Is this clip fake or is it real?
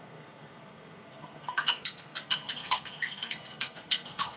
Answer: fake